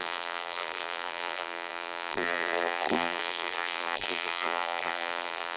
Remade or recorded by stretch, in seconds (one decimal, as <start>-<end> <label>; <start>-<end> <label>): 0.0-5.6 remade